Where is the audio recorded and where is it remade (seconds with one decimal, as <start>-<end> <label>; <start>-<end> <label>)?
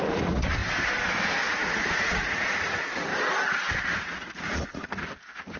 0.0-0.6 remade; 0.6-1.6 recorded; 1.6-3.1 remade; 3.1-4.0 recorded; 4.0-5.6 remade